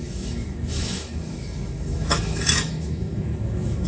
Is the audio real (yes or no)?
no